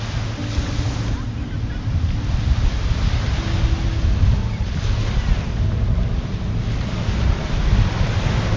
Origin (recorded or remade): recorded